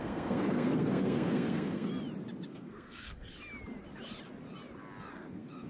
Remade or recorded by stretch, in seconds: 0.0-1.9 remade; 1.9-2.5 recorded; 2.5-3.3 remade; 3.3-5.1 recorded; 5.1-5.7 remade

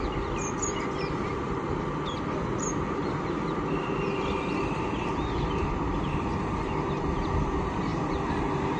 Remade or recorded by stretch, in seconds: 0.0-8.8 recorded

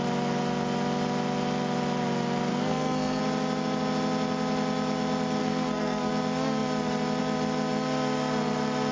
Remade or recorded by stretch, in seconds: 0.0-2.5 recorded; 2.5-3.2 remade; 3.2-5.4 recorded; 5.4-6.1 remade; 6.1-8.9 recorded